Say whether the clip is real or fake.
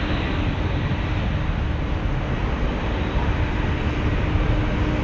real